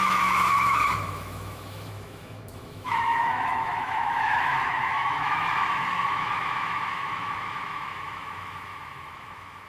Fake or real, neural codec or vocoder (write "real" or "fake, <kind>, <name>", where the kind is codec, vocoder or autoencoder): fake, autoencoder, DAC-VAE